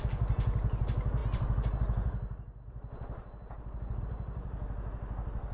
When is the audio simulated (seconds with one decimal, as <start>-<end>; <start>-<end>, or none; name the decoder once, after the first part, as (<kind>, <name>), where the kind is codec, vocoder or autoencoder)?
none